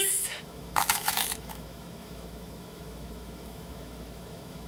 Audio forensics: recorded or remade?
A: remade